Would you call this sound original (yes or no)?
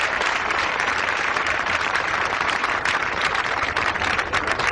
no